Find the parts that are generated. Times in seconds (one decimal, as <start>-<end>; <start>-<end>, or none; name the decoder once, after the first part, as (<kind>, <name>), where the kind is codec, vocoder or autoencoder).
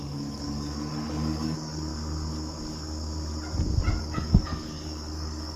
0.0-1.9 (codec, DAC); 4.0-5.6